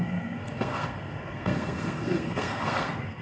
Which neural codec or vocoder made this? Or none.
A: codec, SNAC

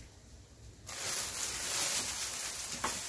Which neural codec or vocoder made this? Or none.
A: none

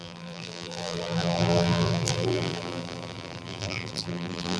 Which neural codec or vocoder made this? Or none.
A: vocoder, BigVGAN v2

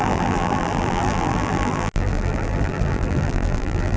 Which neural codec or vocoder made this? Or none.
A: vocoder, BigVGAN v2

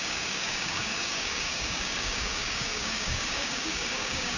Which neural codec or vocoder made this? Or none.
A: codec, DAC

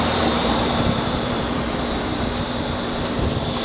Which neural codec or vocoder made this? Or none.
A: vocoder, BigVGAN v2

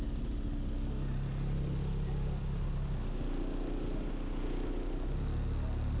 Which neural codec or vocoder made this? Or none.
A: none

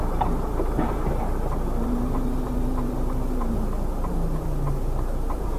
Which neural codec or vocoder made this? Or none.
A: vocoder, BigVGAN v2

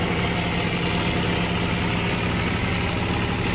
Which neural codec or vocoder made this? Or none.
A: none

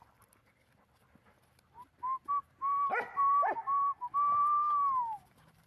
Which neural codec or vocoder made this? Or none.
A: none